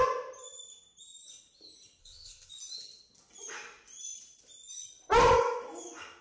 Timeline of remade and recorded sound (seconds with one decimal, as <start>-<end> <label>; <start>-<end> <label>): 0.0-2.0 recorded; 2.0-2.5 remade; 2.5-6.2 recorded